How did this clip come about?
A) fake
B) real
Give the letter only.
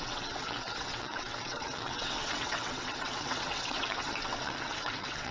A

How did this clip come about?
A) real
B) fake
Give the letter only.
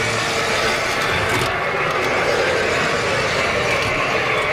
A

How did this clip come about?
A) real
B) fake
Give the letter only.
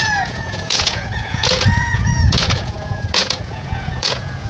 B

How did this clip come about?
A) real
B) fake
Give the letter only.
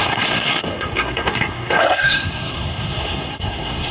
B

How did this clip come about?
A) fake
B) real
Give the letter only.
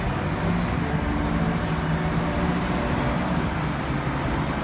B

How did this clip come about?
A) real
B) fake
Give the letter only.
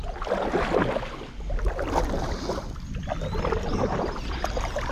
A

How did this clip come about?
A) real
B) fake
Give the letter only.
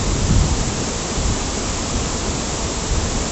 A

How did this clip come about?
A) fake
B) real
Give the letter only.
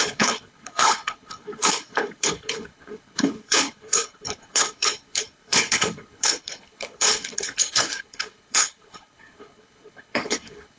A